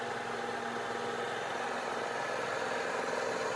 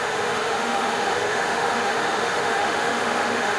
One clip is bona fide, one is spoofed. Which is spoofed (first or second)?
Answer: second